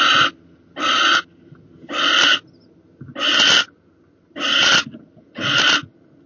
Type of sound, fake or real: real